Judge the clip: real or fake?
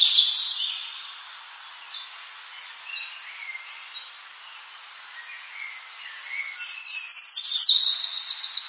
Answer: real